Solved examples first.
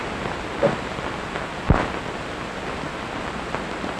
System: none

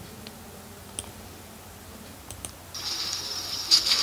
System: none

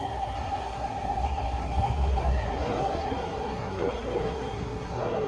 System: codec, SNAC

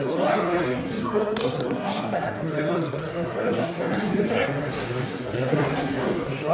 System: codec, SNAC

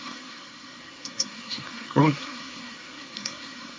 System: codec, SNAC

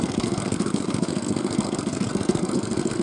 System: codec, SNAC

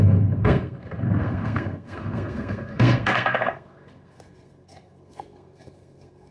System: codec, SNAC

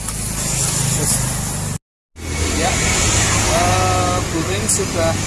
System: none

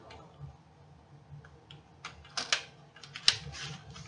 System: none